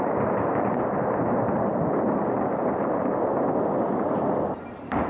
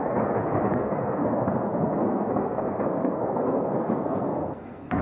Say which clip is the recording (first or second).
first